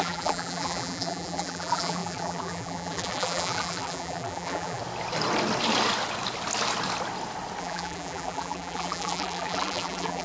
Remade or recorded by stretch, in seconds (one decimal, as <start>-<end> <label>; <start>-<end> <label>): 0.0-4.8 remade; 4.8-7.6 recorded; 7.6-10.2 remade